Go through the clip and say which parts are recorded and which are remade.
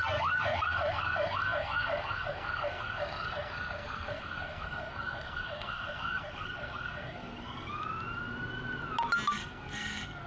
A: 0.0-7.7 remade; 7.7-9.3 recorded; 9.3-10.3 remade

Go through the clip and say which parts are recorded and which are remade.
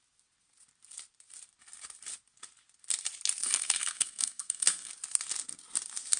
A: 0.0-3.4 recorded; 3.4-4.9 remade; 4.9-6.2 recorded